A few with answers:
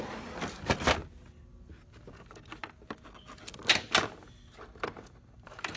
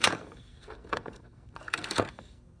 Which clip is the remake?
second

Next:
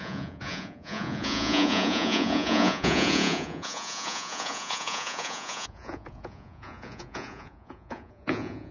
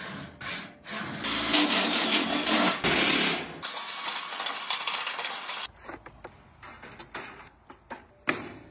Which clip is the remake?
first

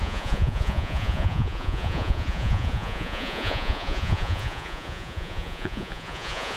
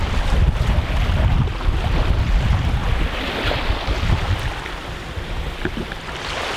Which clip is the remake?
first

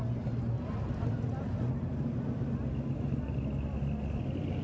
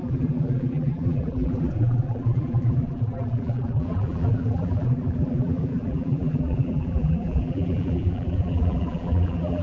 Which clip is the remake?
second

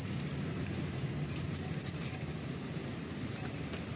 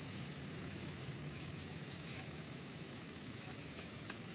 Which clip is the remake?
second